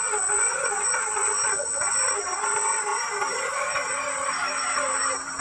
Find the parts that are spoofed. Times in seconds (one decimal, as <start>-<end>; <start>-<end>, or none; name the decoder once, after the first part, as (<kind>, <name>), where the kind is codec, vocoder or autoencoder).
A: none